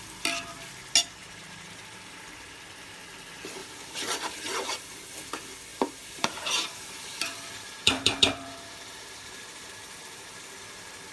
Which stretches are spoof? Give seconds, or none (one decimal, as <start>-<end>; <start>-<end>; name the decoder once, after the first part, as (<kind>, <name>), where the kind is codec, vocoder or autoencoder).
1.2-2.2 (vocoder, BigVGAN v2); 3.6-4.7; 5.7-10.3